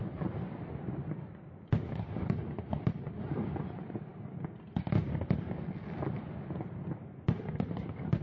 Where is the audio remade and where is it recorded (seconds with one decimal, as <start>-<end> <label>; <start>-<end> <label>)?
0.0-8.2 recorded